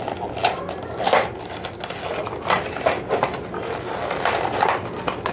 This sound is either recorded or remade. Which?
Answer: recorded